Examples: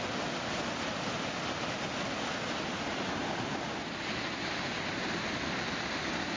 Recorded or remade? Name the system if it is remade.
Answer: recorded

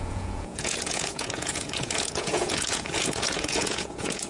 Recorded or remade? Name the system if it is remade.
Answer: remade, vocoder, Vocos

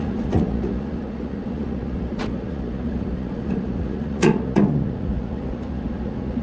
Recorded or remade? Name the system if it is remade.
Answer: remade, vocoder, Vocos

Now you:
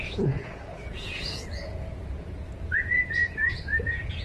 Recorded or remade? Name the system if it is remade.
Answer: remade, vocoder, Vocos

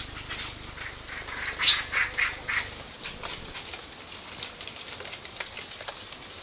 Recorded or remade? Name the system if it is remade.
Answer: recorded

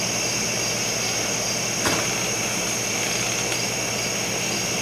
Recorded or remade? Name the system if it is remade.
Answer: recorded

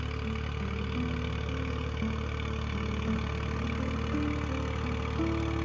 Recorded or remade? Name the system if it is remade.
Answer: recorded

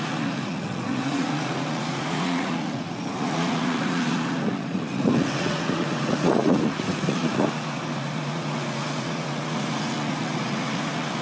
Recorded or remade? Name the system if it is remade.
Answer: remade, vocoder, Vocos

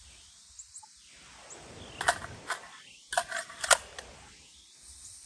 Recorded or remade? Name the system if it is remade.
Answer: recorded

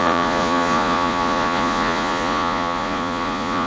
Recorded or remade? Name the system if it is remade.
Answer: remade, vocoder, Vocos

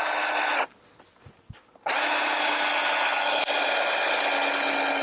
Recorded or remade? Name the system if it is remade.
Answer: recorded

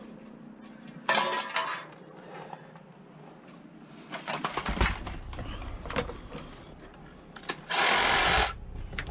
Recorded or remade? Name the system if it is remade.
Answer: recorded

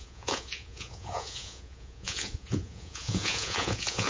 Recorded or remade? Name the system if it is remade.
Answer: remade, vocoder, Vocos